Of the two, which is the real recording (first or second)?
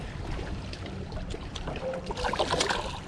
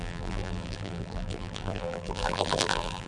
first